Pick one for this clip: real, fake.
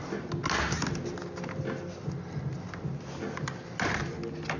real